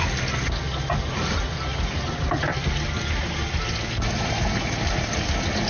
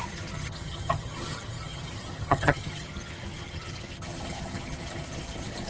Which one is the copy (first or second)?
second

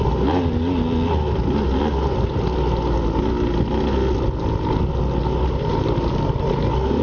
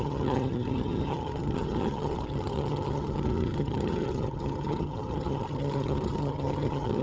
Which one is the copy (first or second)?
second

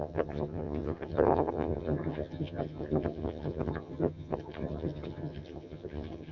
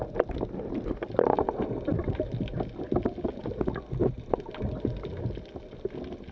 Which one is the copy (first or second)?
first